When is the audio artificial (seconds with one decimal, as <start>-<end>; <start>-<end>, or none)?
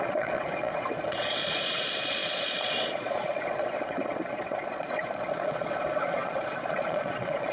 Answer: 0.0-7.5